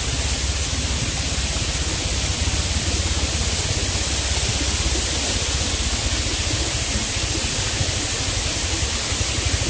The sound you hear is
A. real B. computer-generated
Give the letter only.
A